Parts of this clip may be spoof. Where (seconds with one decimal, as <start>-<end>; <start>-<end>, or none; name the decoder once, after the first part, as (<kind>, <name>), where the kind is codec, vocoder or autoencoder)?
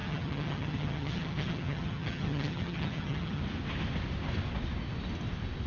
0.0-3.4 (vocoder, HiFi-GAN)